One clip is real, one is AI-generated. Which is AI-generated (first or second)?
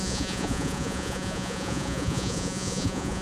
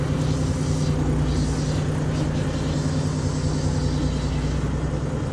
first